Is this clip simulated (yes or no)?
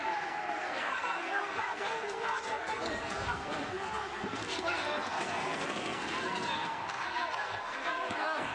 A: yes